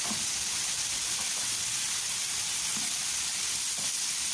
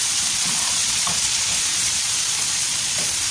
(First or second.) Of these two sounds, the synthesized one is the second